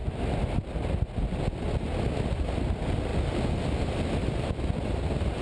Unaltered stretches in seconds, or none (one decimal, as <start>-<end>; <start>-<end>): 0.0-3.1; 5.0-5.4